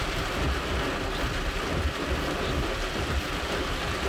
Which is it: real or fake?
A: real